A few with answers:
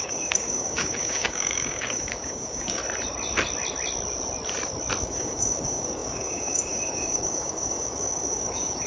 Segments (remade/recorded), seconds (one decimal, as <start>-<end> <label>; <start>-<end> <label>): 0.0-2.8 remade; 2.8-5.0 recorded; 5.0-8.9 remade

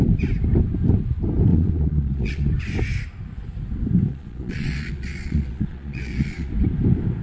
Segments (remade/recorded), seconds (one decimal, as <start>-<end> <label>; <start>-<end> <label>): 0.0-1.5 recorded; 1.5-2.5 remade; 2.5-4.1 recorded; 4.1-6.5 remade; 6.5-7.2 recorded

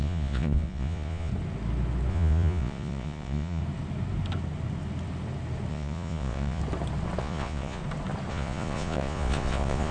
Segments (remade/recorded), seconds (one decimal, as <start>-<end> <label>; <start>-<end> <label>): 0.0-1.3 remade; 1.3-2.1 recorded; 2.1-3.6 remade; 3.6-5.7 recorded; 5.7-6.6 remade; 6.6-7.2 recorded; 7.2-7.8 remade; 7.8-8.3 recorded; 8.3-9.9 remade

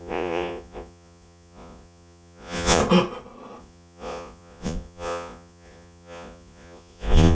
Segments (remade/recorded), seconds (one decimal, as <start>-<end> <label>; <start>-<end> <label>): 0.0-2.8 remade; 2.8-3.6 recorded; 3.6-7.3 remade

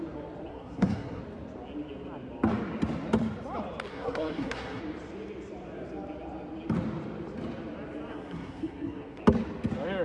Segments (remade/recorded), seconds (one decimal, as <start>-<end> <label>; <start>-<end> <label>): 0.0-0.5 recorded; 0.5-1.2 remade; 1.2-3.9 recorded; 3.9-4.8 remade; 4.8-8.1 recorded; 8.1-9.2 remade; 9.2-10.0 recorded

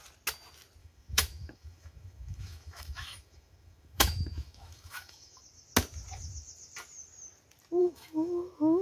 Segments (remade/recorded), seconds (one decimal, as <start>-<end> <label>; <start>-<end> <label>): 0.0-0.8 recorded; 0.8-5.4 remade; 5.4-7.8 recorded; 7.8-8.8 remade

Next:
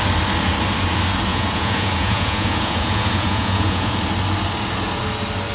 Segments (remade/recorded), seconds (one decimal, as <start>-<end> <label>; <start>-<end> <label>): 0.0-1.3 recorded; 1.3-3.9 remade; 3.9-5.5 recorded